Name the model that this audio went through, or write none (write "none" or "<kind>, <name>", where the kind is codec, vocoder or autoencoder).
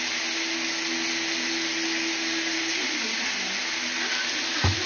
none